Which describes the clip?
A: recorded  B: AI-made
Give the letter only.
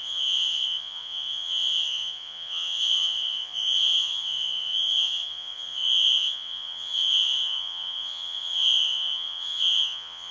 B